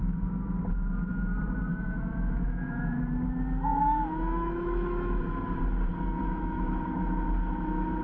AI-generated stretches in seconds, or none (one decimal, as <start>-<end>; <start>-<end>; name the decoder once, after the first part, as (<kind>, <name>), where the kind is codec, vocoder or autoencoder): 1.7-3.0 (autoencoder, DAC-VAE); 3.7-5.2; 6.2-6.8